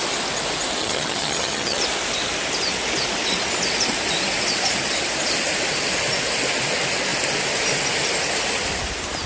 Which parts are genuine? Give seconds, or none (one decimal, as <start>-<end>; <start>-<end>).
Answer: 0.0-0.8; 1.8-9.3